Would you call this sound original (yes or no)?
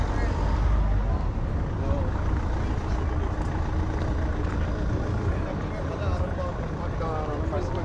yes